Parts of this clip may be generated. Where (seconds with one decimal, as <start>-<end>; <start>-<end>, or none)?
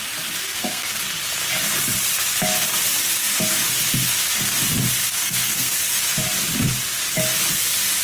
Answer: 0.4-1.0; 5.0-5.8